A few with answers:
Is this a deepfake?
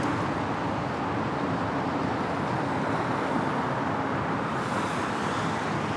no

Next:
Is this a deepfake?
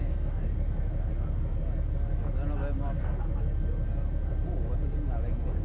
no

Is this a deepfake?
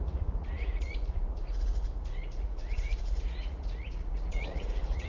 yes